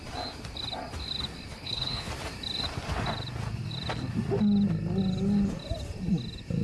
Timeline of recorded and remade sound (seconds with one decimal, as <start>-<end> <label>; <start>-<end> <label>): 0.0-1.5 recorded; 1.5-2.1 remade; 2.1-6.6 recorded